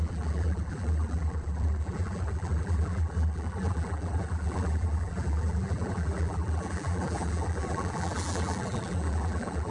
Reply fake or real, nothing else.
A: fake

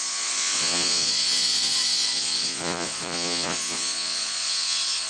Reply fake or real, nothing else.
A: fake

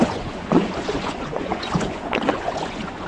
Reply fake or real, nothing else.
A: fake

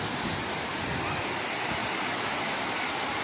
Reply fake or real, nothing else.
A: real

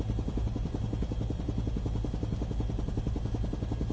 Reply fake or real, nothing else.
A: real